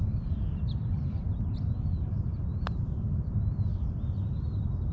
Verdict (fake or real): real